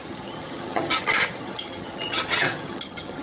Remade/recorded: remade